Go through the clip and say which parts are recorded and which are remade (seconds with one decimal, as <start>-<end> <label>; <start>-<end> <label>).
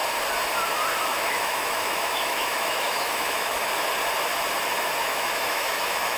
0.0-1.1 recorded; 1.1-3.7 remade; 3.7-5.0 recorded; 5.0-6.2 remade